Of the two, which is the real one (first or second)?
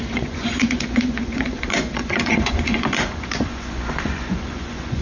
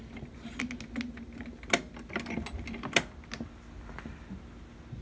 second